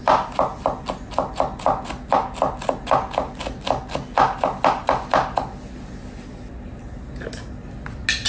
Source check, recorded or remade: recorded